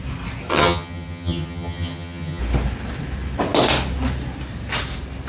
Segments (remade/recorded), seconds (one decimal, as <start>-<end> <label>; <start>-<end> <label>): 0.0-0.5 recorded; 0.5-2.4 remade; 2.4-5.3 recorded